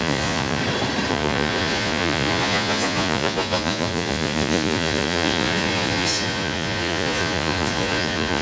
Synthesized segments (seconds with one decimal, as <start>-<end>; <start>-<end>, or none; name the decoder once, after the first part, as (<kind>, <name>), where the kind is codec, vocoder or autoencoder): 0.0-0.6 (vocoder, Vocos); 1.1-8.4